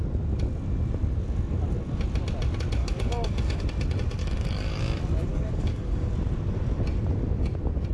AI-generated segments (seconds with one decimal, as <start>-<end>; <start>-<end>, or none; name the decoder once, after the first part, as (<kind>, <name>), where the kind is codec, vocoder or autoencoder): 2.8-3.6 (codec, DAC); 4.2-4.8; 5.3-6.1